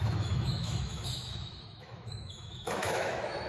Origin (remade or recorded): remade